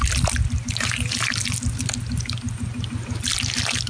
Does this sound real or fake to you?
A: real